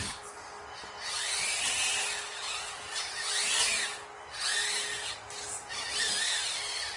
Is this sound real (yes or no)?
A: yes